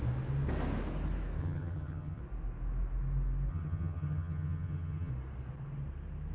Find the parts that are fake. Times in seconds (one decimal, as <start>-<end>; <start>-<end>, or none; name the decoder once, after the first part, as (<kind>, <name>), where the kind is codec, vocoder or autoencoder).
1.4-2.2 (vocoder, HiFi-GAN); 3.5-5.1